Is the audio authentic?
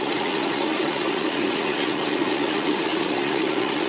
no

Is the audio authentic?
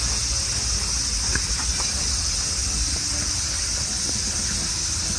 yes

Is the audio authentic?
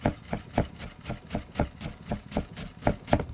yes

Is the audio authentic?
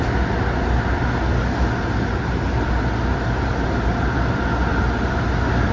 yes